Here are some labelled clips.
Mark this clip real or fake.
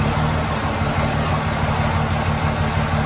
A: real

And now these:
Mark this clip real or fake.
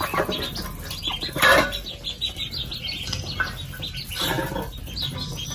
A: real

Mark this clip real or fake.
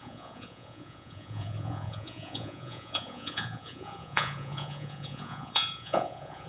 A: fake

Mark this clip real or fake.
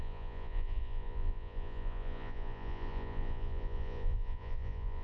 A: fake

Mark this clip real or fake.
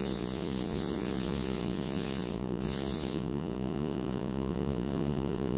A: fake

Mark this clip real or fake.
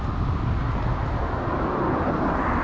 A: real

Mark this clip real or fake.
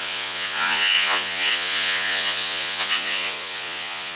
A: fake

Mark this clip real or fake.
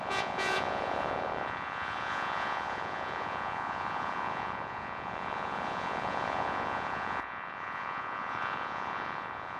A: fake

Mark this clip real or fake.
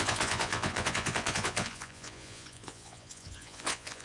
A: fake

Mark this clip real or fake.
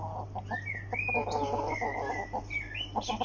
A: real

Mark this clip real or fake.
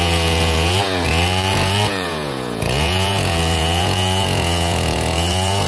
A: fake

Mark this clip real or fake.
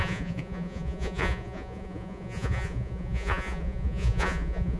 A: fake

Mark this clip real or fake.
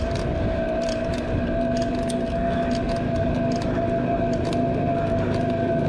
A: real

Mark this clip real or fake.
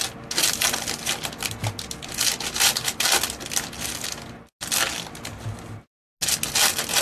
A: real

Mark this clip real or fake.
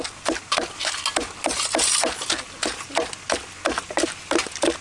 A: real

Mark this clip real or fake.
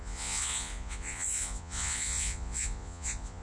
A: fake